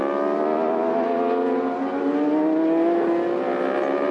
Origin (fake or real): real